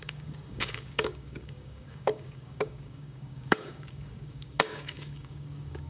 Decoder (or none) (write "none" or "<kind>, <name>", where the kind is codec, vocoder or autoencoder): codec, DAC